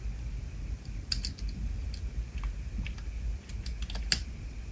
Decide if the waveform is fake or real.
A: real